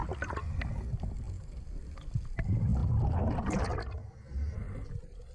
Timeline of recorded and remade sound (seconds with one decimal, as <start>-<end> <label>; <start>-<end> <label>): 0.0-5.3 recorded